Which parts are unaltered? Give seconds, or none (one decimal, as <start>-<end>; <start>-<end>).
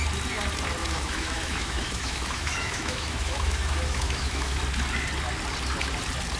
0.0-0.8; 4.6-6.4